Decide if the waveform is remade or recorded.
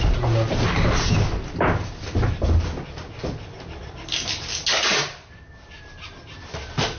recorded